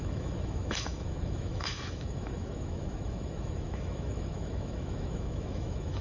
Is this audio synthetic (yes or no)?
yes